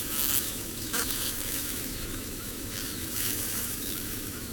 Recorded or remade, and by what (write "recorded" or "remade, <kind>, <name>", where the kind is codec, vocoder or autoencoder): remade, autoencoder, DAC-VAE